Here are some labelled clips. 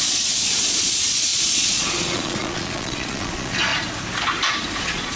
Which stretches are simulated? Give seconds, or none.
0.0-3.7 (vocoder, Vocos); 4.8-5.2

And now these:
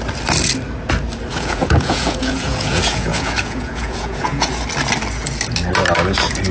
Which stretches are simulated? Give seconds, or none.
1.3-4.6 (vocoder, Vocos)

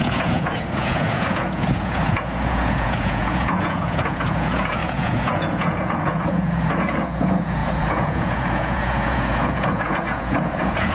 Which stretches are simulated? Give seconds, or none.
0.0-10.9 (vocoder, Vocos)

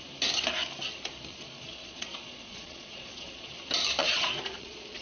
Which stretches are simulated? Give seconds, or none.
1.3-3.5 (vocoder, Vocos); 4.0-5.0

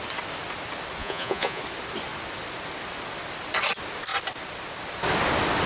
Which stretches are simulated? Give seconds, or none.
1.0-1.6 (vocoder, Vocos)

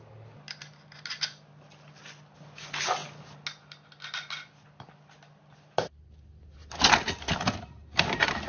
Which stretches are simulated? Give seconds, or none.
none